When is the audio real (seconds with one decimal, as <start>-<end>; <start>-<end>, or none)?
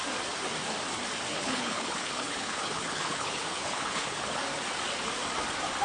0.0-1.3; 4.4-5.8